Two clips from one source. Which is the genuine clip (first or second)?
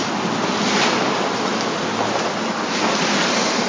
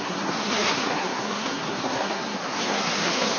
first